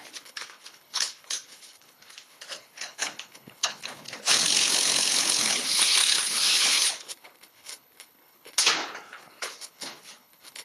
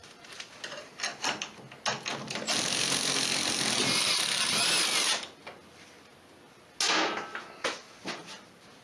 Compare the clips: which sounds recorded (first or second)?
second